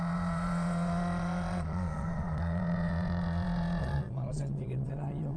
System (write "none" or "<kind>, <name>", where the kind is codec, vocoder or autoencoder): vocoder, Vocos